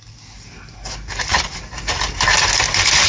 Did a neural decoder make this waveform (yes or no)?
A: no